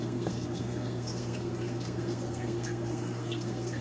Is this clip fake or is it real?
fake